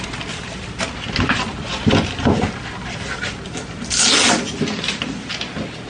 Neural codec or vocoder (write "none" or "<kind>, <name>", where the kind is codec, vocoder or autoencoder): none